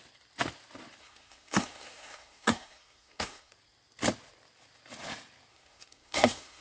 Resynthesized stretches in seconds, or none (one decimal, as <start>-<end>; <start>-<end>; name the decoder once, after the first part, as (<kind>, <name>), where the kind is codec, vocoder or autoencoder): 1.0-3.5 (codec, SNAC); 5.5-6.6